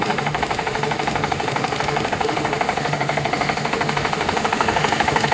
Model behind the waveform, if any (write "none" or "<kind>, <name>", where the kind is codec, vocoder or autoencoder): autoencoder, DAC-VAE